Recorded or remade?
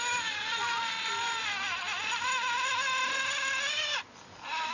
recorded